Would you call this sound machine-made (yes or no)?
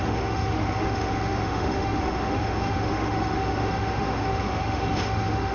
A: yes